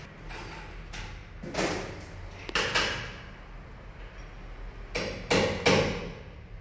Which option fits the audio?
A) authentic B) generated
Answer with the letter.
A